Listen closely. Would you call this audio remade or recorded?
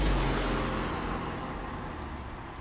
recorded